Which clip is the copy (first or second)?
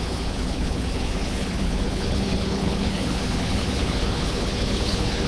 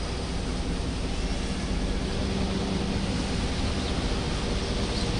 first